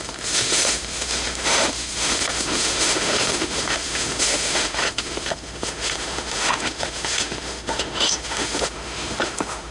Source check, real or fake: fake